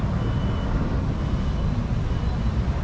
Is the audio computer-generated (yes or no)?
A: no